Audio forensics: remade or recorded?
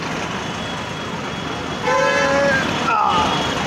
recorded